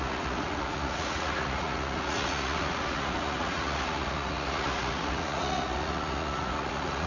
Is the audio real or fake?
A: fake